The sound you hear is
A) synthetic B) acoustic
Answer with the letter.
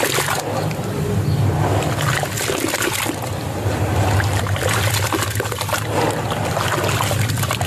B